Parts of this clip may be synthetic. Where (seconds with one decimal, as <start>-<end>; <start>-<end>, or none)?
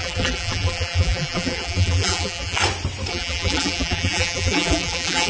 0.0-2.6; 3.1-5.3